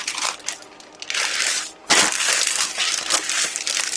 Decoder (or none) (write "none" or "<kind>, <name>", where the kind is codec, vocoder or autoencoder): none